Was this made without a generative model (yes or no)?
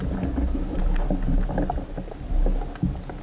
yes